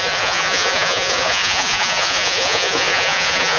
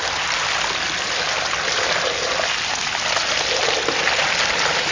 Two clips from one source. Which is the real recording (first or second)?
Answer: second